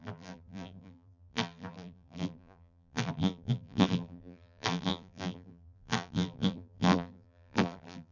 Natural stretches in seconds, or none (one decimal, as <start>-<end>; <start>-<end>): none